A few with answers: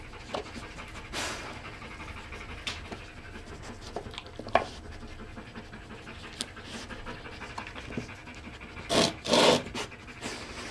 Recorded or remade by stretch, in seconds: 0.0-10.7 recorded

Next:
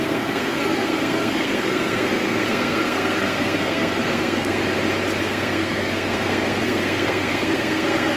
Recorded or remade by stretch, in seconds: 0.0-4.6 remade; 4.6-5.2 recorded; 5.2-8.2 remade